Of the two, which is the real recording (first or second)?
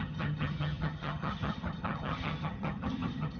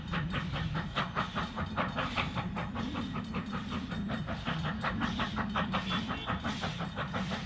second